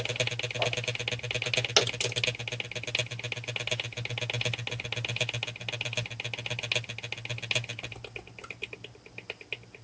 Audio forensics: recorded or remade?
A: recorded